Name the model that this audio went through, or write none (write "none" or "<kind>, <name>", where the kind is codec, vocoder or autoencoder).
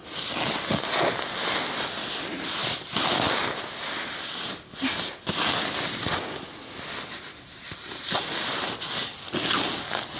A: none